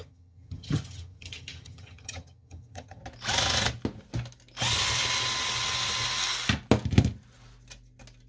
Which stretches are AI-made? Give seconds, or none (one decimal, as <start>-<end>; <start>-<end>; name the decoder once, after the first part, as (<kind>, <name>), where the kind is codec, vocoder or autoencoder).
0.0-3.0 (vocoder, HiFi-GAN)